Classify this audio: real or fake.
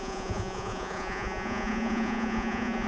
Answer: fake